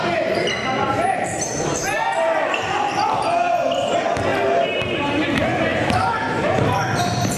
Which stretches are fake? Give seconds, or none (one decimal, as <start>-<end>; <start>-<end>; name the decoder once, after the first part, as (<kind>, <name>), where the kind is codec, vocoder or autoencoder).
0.0-4.3 (vocoder, BigVGAN v2); 5.2-7.4

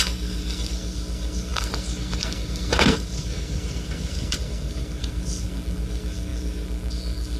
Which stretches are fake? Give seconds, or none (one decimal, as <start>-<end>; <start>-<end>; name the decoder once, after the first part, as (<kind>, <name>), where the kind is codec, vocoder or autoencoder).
0.0-7.4 (codec, SNAC)

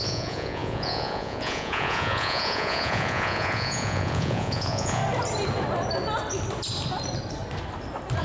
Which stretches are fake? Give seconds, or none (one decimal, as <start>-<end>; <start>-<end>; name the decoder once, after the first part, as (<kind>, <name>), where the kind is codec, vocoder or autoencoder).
0.0-5.0 (vocoder, Vocos)

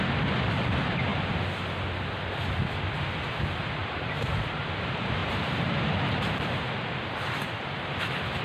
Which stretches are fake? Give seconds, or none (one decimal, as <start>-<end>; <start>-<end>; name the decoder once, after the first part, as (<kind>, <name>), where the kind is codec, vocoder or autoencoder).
3.8-4.6 (vocoder, BigVGAN v2); 5.2-6.7

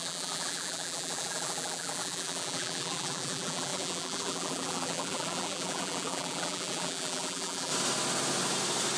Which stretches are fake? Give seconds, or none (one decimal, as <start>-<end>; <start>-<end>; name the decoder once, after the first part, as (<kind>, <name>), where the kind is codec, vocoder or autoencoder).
0.0-7.7 (vocoder, BigVGAN v2)

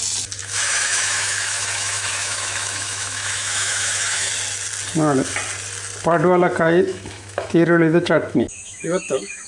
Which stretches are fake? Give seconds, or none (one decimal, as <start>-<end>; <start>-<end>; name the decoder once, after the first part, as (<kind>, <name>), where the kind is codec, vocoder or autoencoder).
0.4-4.3 (autoencoder, DAC-VAE); 6.9-9.5

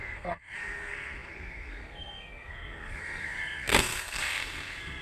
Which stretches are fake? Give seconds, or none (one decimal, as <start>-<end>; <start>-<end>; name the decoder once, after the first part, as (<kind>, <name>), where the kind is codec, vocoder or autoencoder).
0.0-5.0 (codec, SNAC)